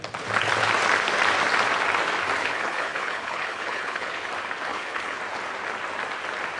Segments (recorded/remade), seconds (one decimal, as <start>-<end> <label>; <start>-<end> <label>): 0.0-2.4 recorded; 2.4-4.3 remade; 4.3-4.7 recorded; 4.7-5.2 remade; 5.2-6.6 recorded

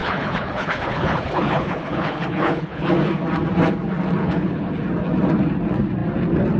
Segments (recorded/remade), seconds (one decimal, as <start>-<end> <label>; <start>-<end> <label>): 0.0-2.9 remade; 2.9-4.2 recorded; 4.2-4.7 remade; 4.7-6.6 recorded

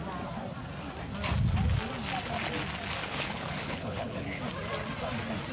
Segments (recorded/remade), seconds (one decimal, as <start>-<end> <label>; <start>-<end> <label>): 0.0-3.0 recorded; 3.0-4.4 remade; 4.4-5.5 recorded